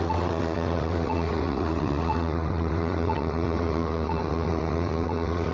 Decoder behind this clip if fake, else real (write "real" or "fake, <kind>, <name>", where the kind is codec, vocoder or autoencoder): fake, vocoder, WaveNeXt